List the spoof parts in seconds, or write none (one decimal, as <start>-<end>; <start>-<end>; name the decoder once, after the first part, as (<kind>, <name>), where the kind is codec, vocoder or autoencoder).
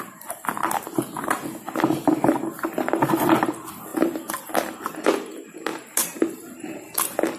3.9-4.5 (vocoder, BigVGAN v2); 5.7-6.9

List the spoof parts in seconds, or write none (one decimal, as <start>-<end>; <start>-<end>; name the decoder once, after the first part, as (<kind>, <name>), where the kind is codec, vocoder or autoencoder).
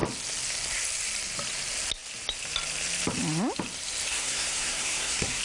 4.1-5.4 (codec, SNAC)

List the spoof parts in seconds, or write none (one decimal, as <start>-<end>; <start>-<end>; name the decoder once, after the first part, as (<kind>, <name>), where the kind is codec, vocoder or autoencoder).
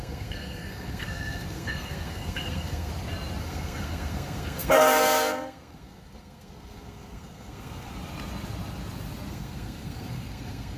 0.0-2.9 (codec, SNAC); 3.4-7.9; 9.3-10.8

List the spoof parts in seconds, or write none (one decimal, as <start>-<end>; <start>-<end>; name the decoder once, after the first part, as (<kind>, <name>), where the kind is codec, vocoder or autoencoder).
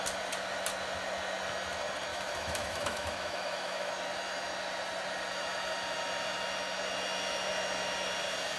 2.1-3.9 (autoencoder, DAC-VAE)